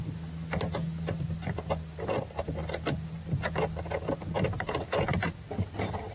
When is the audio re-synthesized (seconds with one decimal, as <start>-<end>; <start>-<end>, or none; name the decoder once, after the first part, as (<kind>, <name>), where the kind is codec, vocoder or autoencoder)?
none